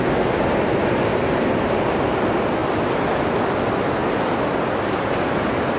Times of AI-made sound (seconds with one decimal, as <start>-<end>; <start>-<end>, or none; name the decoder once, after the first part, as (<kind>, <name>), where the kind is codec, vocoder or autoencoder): 1.1-1.8 (vocoder, BigVGAN v2); 2.6-3.4; 4.0-5.2

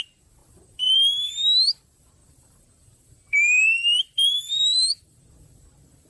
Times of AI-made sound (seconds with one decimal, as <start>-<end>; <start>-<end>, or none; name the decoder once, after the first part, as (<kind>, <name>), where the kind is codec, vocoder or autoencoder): 0.4-1.3 (vocoder, BigVGAN v2); 2.2-5.3

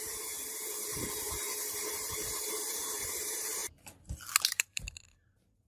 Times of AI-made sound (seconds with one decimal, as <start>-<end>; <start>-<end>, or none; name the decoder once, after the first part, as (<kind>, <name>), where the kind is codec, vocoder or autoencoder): 0.0-3.6 (vocoder, BigVGAN v2); 4.4-5.7

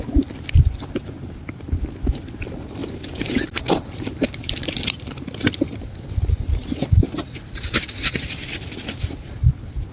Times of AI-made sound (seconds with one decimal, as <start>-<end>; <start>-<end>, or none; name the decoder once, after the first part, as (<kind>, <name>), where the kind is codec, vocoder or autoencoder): 2.8-5.5 (vocoder, BigVGAN v2); 6.6-8.5

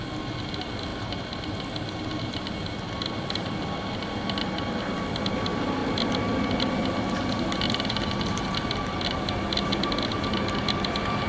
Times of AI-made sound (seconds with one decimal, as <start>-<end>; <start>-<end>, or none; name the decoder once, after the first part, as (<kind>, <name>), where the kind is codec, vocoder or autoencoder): none

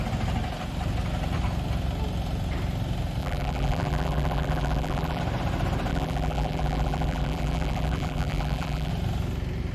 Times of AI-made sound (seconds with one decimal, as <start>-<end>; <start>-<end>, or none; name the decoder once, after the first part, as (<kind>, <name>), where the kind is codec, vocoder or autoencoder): 3.2-5.2 (vocoder, BigVGAN v2); 5.9-8.9

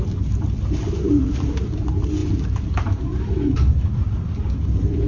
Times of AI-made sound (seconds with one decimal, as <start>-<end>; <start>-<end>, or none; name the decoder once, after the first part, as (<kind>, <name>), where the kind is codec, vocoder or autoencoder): none